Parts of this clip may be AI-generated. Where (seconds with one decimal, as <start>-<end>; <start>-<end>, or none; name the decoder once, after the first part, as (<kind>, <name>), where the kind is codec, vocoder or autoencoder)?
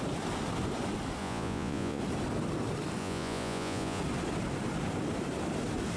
1.2-2.0 (vocoder, Vocos); 3.0-4.0